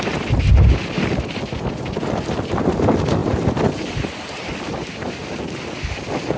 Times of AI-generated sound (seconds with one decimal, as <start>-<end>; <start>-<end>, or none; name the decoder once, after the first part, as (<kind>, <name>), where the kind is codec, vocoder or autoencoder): 3.2-5.5 (vocoder, BigVGAN v2)